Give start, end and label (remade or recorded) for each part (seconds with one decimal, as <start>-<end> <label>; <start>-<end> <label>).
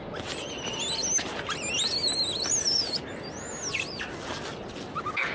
0.0-5.3 recorded